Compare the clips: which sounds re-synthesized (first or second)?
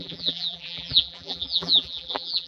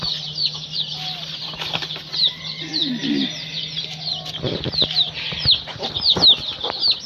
first